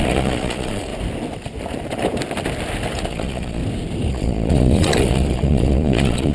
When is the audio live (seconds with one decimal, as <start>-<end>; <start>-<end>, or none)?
0.9-3.1; 3.6-4.1